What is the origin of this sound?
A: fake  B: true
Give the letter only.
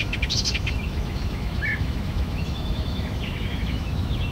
A